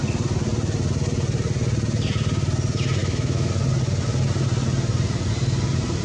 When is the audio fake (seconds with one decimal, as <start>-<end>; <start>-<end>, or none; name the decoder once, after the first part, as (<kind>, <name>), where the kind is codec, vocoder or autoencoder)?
3.0-3.5 (autoencoder, DAC-VAE)